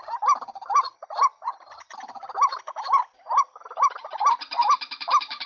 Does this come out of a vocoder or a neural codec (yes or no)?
no